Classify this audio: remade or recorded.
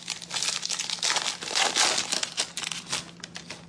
recorded